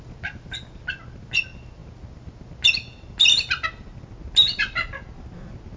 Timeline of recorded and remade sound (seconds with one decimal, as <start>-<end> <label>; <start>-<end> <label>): 0.0-5.8 recorded